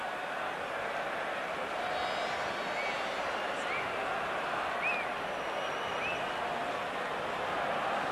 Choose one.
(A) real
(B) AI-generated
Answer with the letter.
A